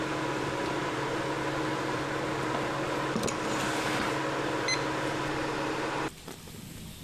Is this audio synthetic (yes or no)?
no